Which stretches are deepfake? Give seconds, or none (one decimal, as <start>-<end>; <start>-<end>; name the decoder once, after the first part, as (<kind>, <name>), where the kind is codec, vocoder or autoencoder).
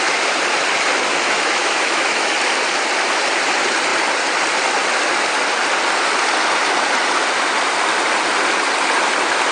1.1-2.3 (autoencoder, DAC-VAE)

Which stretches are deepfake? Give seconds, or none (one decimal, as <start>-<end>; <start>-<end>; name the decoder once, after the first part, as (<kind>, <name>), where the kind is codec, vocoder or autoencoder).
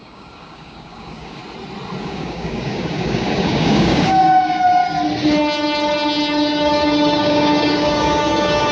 0.0-1.4 (codec, DAC); 2.0-4.8; 6.6-8.7